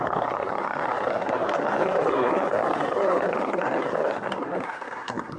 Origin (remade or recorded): remade